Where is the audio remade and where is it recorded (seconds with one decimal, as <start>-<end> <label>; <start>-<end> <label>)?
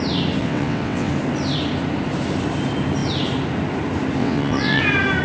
0.0-0.4 recorded; 0.4-1.1 remade; 1.1-4.2 recorded; 4.2-4.8 remade; 4.8-5.2 recorded